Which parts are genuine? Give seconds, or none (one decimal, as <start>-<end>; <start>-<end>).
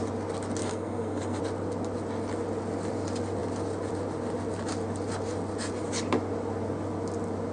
0.0-0.6; 1.4-7.5